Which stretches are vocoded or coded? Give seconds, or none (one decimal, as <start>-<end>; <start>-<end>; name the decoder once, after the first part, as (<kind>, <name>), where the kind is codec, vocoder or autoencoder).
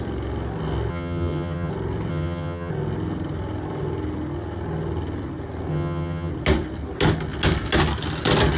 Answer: 0.9-1.7 (vocoder, HiFi-GAN); 2.1-2.7; 5.7-6.3